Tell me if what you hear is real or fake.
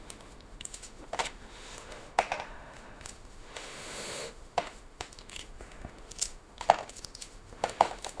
fake